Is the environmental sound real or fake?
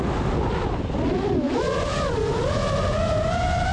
real